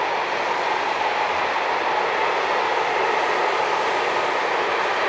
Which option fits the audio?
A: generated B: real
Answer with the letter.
B